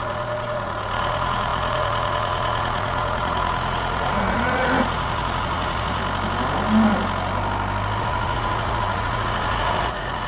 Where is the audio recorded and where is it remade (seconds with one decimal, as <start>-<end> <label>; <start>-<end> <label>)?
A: 0.0-6.0 remade; 6.0-8.0 recorded; 8.0-10.3 remade